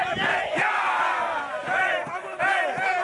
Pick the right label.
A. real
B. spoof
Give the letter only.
A